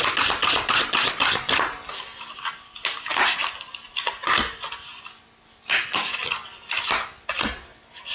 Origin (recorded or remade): recorded